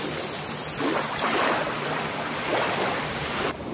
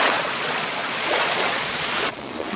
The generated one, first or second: second